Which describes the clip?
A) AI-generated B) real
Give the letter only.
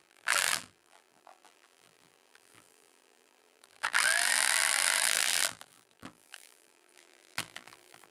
A